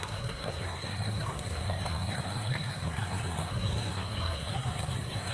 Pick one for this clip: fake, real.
fake